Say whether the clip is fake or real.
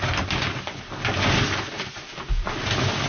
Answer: real